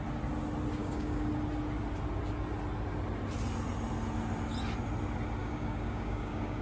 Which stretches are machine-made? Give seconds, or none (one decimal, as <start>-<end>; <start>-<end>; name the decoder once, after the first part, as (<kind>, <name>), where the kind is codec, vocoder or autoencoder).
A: 0.8-1.3 (codec, DAC); 5.4-6.6